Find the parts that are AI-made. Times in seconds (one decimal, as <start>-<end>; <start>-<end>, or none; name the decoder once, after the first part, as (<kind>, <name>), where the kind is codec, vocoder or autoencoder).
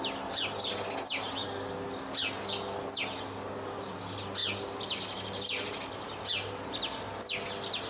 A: none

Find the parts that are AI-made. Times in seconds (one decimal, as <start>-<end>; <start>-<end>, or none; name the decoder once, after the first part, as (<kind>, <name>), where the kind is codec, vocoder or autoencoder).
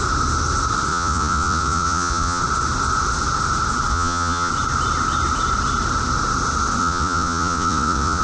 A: 0.9-2.4 (vocoder, Vocos); 3.9-4.5; 6.8-8.2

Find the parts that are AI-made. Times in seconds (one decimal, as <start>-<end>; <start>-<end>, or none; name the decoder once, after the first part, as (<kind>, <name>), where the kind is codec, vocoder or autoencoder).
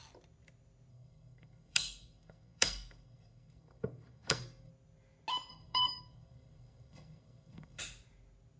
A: 0.9-4.7 (codec, SNAC); 5.5-7.8